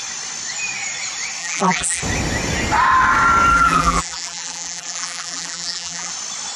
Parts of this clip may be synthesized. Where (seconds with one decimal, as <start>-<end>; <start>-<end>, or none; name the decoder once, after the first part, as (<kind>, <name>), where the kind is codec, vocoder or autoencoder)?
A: 1.4-2.0 (vocoder, BigVGAN v2); 3.5-6.1